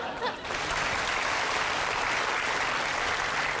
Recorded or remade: recorded